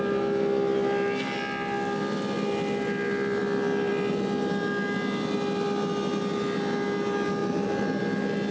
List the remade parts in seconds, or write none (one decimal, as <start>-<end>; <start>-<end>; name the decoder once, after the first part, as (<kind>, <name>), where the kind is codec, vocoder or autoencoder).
none